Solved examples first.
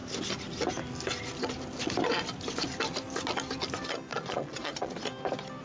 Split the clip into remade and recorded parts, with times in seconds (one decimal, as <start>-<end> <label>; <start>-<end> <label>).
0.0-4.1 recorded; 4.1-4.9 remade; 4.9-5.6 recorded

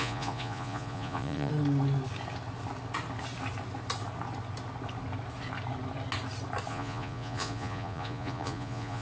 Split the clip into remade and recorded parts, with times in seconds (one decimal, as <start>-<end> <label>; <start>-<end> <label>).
0.0-1.5 remade; 1.5-6.7 recorded; 6.7-9.0 remade

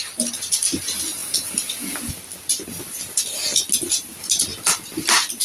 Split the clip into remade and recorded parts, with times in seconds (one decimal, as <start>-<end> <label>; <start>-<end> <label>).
0.0-5.4 recorded

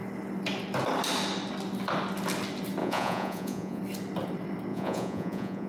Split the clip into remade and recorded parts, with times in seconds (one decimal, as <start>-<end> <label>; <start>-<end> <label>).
0.0-2.8 recorded; 2.8-3.8 remade; 3.8-4.7 recorded; 4.7-5.7 remade

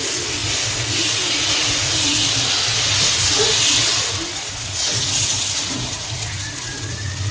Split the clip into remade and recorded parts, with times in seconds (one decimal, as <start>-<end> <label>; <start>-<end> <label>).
0.0-2.2 remade; 2.2-2.8 recorded; 2.8-7.3 remade

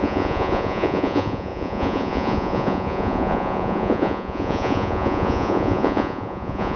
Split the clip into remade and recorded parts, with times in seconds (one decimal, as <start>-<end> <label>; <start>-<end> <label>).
0.0-6.8 remade

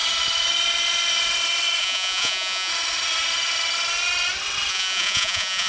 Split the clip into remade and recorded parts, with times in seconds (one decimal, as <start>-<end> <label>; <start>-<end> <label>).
0.0-1.8 recorded; 1.8-2.7 remade; 2.7-4.7 recorded; 4.7-5.7 remade

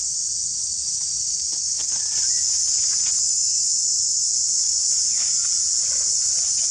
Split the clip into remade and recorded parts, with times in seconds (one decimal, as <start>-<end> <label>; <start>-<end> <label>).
0.0-4.3 recorded; 4.3-5.9 remade; 5.9-6.7 recorded